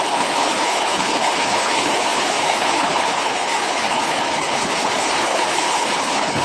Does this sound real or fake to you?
fake